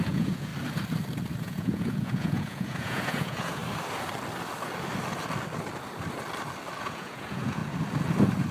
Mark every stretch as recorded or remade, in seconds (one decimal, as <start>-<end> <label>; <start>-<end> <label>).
0.0-0.5 remade; 0.5-1.4 recorded; 1.4-3.6 remade; 3.6-6.8 recorded; 6.8-7.6 remade; 7.6-8.5 recorded